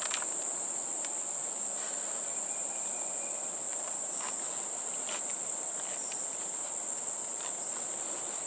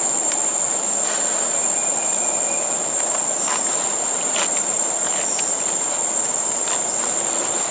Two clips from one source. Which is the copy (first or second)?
first